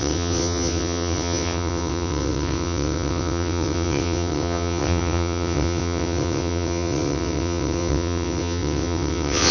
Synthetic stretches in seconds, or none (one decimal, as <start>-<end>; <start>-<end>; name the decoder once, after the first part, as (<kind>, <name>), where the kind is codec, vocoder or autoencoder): 0.0-9.5 (vocoder, WaveNeXt)